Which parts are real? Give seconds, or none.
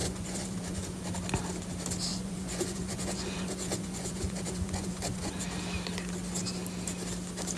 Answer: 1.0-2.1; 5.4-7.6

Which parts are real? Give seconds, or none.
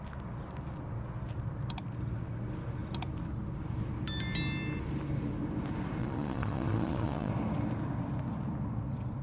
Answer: 0.0-6.0; 7.3-9.2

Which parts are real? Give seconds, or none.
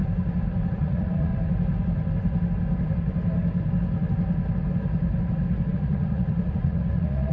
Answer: 0.0-0.7; 1.3-5.7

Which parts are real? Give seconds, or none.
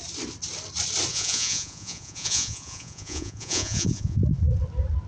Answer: 0.0-1.1; 4.2-5.1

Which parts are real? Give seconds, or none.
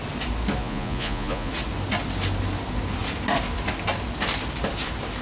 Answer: 0.0-0.6; 1.5-5.2